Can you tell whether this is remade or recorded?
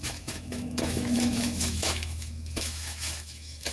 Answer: remade